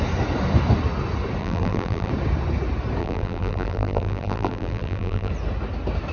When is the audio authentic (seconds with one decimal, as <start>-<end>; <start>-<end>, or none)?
0.0-1.4; 2.1-3.0; 5.3-6.1